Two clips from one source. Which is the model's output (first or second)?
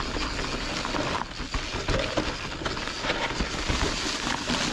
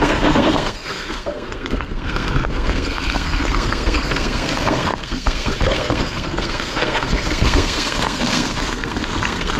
second